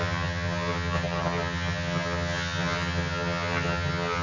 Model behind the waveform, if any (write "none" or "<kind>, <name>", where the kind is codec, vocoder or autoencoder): vocoder, HiFi-GAN